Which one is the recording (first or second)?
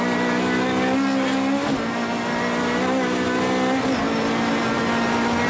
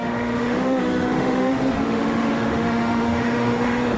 first